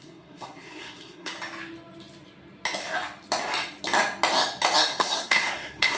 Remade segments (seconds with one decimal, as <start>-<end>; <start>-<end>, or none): 0.0-1.3; 4.9-6.0

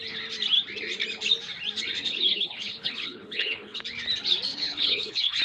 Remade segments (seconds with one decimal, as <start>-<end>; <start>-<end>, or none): 2.1-3.8; 4.5-5.4

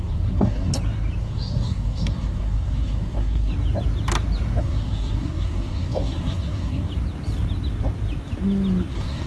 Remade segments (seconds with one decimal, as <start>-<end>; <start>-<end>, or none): 0.0-0.7; 1.2-3.5; 4.6-6.9; 8.9-9.3

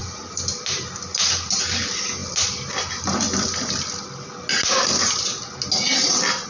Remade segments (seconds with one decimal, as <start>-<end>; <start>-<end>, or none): none

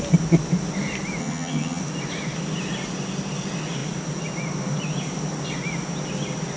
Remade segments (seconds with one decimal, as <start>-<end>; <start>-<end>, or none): 1.2-1.8

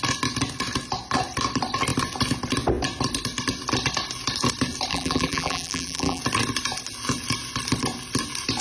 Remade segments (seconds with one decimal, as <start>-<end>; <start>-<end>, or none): 4.9-6.2